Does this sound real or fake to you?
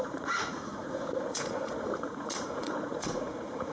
fake